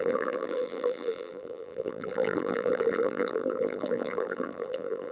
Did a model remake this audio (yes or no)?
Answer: yes